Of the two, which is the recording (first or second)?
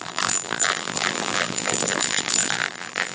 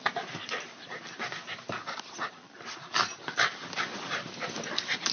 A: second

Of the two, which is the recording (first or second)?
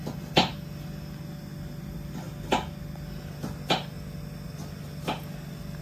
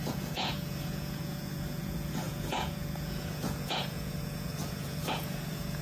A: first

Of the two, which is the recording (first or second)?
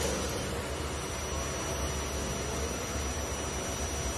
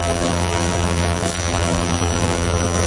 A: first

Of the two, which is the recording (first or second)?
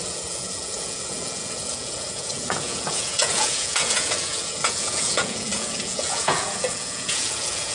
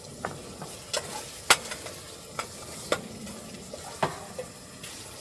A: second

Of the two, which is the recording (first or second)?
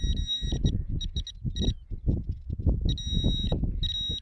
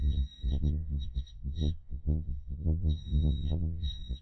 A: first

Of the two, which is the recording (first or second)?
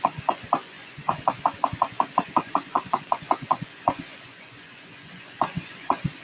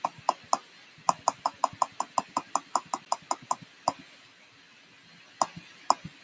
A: second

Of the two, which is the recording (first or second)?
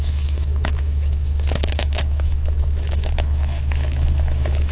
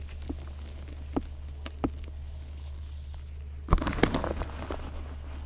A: second